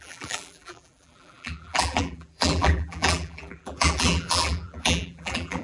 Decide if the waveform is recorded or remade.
remade